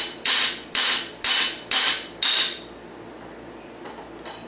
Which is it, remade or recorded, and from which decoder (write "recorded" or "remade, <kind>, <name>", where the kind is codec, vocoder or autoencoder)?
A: recorded